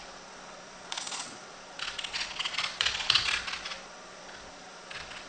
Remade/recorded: remade